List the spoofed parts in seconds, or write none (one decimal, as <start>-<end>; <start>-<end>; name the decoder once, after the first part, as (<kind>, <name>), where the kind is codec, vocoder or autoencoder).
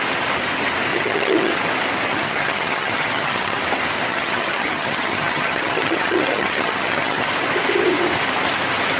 0.9-1.5 (vocoder, HiFi-GAN); 2.1-3.6; 4.1-7.3